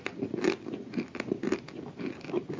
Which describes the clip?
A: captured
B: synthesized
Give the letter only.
A